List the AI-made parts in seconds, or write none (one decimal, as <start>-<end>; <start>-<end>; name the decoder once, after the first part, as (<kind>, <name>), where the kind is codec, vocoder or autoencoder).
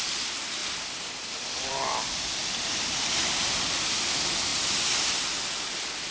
0.6-3.6 (vocoder, BigVGAN v2)